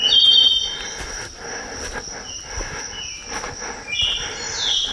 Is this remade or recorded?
recorded